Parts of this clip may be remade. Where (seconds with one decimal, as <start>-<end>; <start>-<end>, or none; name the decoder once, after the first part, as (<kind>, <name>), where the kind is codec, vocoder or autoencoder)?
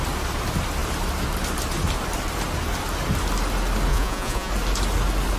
3.9-4.5 (vocoder, Vocos)